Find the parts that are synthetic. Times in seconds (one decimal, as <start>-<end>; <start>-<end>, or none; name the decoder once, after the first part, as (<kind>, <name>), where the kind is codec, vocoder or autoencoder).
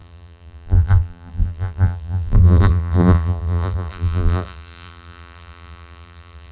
0.0-6.5 (vocoder, BigVGAN v2)